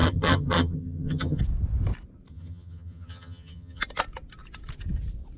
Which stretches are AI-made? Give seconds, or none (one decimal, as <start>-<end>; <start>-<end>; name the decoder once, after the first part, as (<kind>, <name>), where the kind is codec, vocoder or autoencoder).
0.0-1.4 (vocoder, HiFi-GAN); 2.3-3.8